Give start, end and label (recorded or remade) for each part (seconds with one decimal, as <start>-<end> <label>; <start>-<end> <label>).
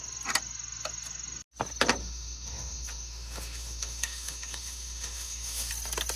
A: 0.0-2.0 recorded; 2.0-5.7 remade; 5.7-6.2 recorded